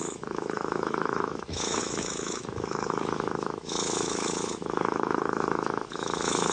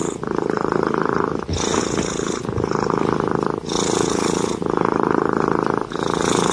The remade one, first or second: first